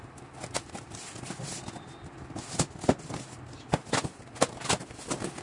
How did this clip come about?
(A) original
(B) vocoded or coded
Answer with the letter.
A